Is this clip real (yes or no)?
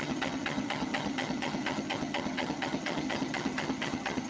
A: no